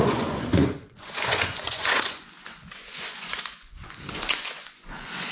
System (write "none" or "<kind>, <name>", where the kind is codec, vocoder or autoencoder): vocoder, Vocos